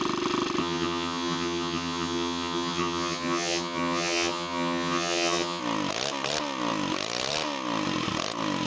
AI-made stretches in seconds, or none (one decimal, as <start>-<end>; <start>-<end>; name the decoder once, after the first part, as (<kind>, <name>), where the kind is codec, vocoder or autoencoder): 0.6-5.6 (vocoder, HiFi-GAN)